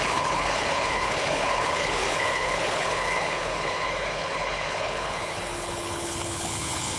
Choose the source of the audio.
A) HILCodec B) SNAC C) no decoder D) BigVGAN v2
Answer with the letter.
A